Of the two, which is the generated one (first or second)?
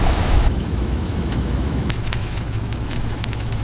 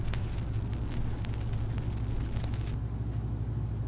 first